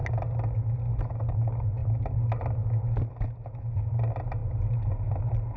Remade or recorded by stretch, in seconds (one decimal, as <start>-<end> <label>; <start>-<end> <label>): 0.0-5.6 recorded